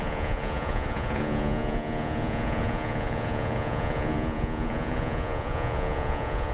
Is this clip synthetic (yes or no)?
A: yes